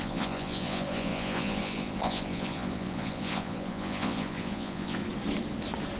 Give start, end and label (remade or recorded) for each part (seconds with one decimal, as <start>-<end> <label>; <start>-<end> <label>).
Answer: 0.0-5.0 remade; 5.0-6.0 recorded